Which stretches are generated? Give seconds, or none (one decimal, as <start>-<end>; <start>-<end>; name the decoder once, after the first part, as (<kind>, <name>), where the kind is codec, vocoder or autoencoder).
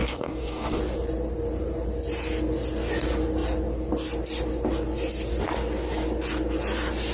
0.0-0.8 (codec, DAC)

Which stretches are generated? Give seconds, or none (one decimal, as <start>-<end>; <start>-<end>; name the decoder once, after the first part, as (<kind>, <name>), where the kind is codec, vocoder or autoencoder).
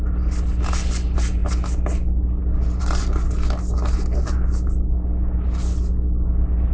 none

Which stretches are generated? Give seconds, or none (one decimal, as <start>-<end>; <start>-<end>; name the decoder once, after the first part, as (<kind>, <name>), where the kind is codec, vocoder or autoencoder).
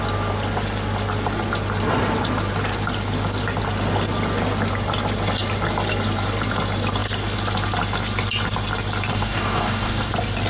9.1-10.1 (codec, DAC)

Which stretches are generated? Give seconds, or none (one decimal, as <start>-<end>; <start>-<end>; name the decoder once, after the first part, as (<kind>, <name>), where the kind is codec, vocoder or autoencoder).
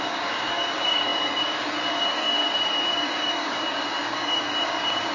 0.0-5.1 (codec, DAC)